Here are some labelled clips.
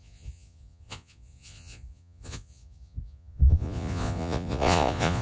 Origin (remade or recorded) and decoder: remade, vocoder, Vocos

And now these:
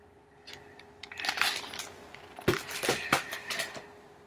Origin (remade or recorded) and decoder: recorded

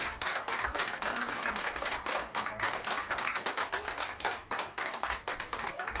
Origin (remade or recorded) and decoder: remade, codec, DAC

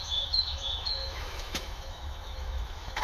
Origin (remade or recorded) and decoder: remade, autoencoder, DAC-VAE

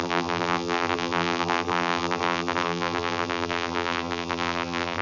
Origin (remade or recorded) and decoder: remade, vocoder, BigVGAN v2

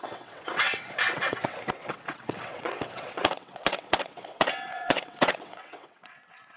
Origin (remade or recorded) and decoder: remade, vocoder, WaveNeXt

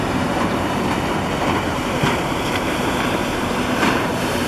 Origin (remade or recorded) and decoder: remade, vocoder, BigVGAN v2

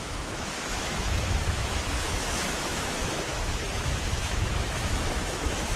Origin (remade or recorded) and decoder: remade, autoencoder, DAC-VAE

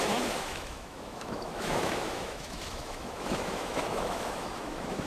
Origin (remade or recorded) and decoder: remade, autoencoder, DAC-VAE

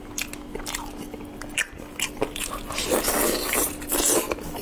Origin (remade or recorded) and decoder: recorded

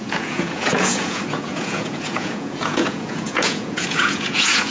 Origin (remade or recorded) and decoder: remade, vocoder, Vocos